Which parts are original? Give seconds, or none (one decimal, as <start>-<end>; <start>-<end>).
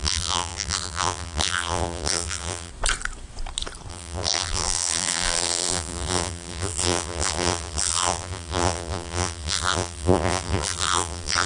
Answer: 2.7-3.9